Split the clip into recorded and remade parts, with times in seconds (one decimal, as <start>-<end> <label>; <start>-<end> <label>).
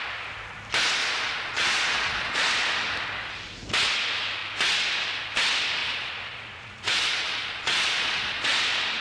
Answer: 0.0-1.0 recorded; 1.0-2.5 remade; 2.5-5.8 recorded; 5.8-8.6 remade; 8.6-9.0 recorded